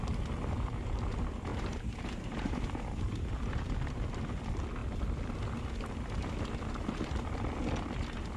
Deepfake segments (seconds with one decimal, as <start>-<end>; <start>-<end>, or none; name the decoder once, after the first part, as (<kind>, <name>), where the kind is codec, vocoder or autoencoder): 1.5-4.2 (vocoder, BigVGAN v2)